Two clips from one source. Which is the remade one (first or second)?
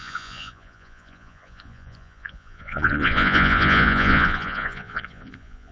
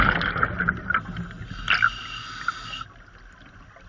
first